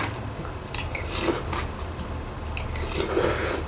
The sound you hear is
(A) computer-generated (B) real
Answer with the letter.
B